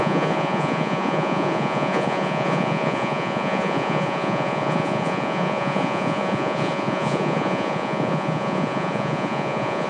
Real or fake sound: fake